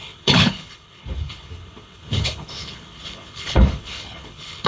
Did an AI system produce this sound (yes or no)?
yes